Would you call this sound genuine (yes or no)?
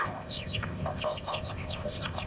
no